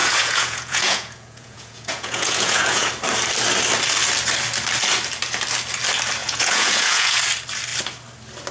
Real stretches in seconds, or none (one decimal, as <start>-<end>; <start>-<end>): 2.9-6.2; 7.2-8.5